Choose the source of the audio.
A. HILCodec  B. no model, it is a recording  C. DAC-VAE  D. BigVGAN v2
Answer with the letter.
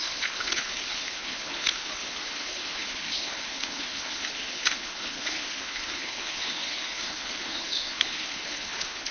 A